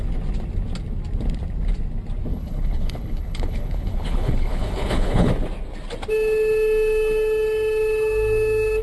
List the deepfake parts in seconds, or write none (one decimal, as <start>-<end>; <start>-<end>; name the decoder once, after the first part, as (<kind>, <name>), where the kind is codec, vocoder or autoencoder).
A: 2.3-5.3 (codec, HILCodec)